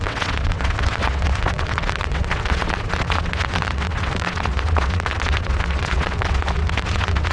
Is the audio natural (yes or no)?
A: no